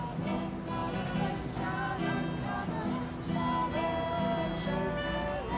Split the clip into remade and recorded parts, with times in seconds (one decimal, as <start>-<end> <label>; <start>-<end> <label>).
0.0-5.6 recorded